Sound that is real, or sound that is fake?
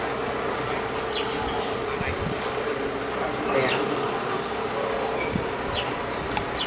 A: real